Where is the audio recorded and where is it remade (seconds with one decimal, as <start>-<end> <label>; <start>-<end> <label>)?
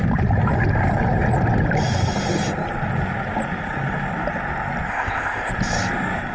0.0-4.9 recorded; 4.9-5.5 remade; 5.5-6.3 recorded